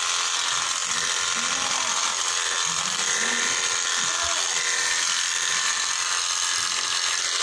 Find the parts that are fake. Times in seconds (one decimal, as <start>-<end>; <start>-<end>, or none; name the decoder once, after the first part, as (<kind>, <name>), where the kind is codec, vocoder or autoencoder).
0.8-3.9 (vocoder, BigVGAN v2); 5.3-6.1